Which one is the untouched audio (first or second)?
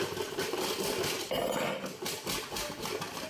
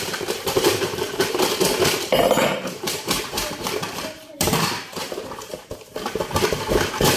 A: first